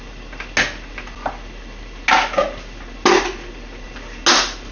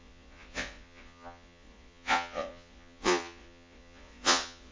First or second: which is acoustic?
first